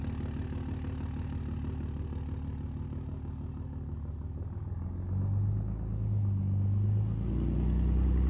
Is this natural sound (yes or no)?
yes